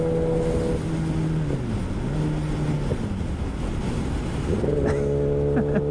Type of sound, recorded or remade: recorded